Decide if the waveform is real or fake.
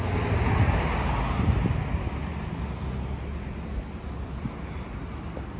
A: real